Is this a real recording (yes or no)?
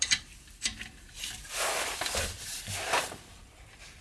no